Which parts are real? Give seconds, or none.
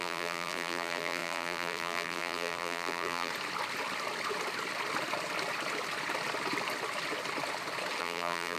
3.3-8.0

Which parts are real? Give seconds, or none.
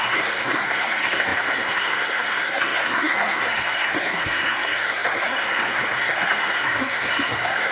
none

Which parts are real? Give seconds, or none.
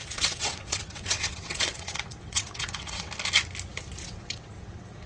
3.1-4.0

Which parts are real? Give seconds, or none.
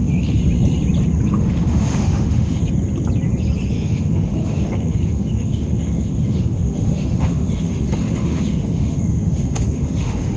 0.4-1.3; 2.6-3.7